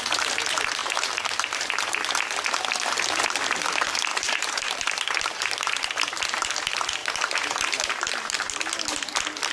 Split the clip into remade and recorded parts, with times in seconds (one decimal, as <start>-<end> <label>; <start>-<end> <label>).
0.0-0.8 recorded; 0.8-1.9 remade; 1.9-4.1 recorded; 4.1-6.0 remade; 6.0-7.0 recorded; 7.0-8.3 remade; 8.3-9.5 recorded